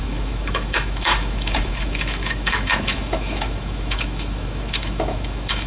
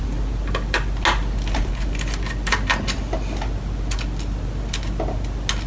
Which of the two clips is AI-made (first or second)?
first